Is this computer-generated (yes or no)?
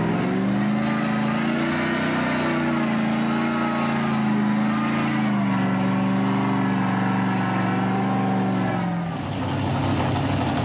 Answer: no